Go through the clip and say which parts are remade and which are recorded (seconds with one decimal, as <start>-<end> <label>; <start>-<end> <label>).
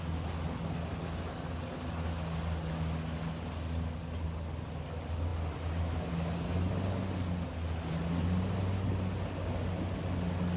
0.0-10.6 recorded